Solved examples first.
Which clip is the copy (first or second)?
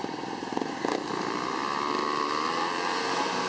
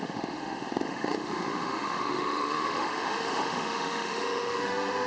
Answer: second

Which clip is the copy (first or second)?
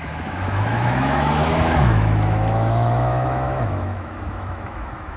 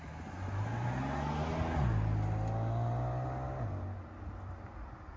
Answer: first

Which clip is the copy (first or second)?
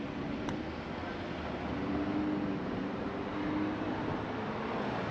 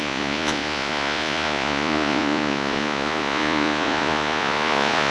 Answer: second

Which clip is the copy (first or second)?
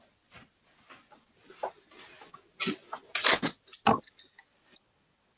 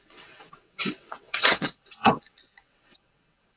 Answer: second